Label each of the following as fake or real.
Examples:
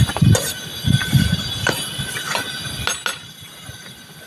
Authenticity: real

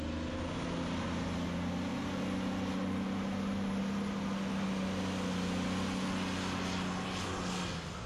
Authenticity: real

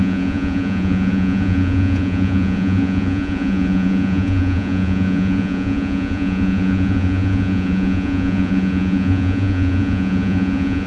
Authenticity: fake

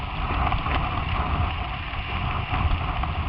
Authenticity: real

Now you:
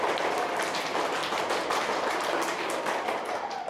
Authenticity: real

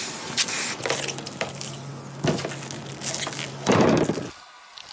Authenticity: real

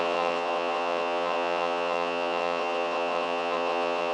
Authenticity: fake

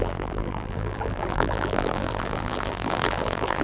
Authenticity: fake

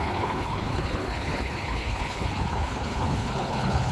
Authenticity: fake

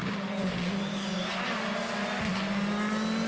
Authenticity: real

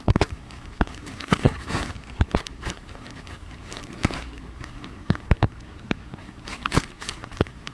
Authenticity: fake